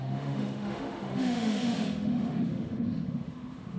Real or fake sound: fake